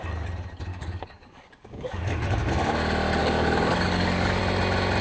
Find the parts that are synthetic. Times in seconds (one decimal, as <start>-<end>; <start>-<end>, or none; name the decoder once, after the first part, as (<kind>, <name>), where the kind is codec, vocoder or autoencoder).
0.7-2.5 (codec, DAC); 3.2-4.4